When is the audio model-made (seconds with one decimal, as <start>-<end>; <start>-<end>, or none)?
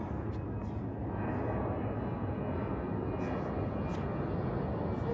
none